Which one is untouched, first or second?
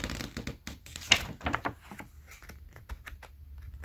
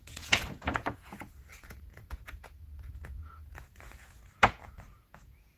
first